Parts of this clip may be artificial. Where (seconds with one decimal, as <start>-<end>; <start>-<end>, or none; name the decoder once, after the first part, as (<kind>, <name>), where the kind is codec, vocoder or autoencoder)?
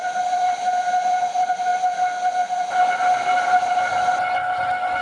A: none